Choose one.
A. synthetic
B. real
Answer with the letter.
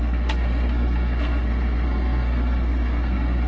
A